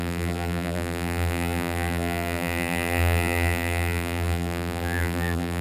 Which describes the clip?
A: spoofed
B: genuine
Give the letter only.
A